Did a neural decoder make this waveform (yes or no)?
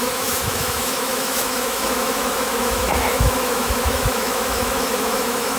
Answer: yes